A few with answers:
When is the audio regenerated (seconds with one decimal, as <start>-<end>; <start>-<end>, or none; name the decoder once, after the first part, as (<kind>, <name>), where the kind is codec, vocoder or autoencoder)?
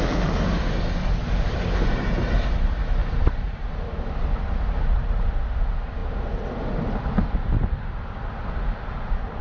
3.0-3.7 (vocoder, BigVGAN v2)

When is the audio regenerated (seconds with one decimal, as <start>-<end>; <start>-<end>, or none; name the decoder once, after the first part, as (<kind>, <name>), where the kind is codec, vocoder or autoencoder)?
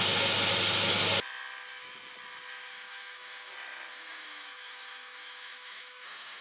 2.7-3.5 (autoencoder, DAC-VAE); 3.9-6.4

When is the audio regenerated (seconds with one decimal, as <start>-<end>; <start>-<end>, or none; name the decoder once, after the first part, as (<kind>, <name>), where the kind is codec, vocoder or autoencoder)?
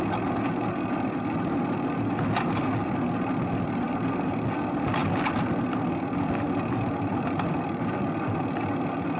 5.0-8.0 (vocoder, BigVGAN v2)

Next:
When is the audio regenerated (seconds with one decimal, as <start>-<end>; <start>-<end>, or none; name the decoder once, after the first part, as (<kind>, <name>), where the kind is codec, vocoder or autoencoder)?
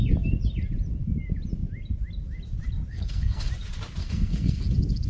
2.9-3.5 (codec, SNAC); 4.0-4.6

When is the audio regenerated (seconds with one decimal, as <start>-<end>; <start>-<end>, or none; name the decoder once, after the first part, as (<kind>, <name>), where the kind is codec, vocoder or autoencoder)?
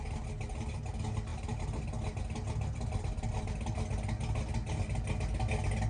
none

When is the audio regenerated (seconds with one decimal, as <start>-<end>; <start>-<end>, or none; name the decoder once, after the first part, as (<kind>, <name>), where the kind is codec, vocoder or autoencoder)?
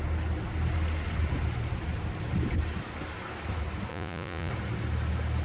3.9-4.5 (vocoder, Vocos)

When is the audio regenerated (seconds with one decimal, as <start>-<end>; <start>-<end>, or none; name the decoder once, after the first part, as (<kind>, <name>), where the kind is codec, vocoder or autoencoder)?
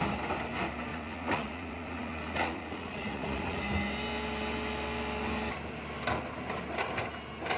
0.9-3.6 (vocoder, Vocos)